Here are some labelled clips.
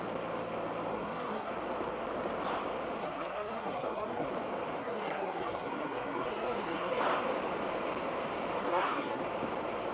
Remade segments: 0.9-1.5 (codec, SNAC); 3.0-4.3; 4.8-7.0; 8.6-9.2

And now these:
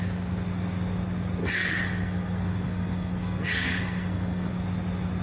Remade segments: 1.4-4.5 (codec, SNAC)

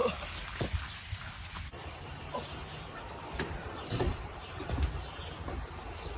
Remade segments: 3.6-4.6 (vocoder, BigVGAN v2)

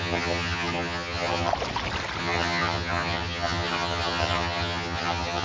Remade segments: 0.0-1.5 (vocoder, HiFi-GAN); 2.2-5.4